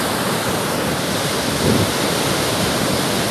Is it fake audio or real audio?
real